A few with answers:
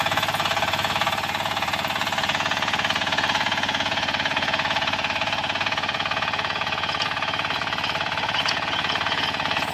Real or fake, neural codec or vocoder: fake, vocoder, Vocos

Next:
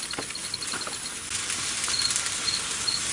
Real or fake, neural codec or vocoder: real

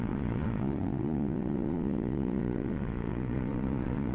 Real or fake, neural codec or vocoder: fake, vocoder, Vocos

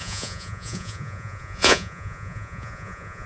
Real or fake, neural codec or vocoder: fake, vocoder, Vocos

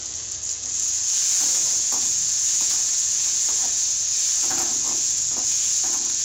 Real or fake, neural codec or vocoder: fake, vocoder, Vocos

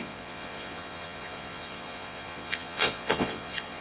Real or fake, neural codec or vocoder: fake, vocoder, Vocos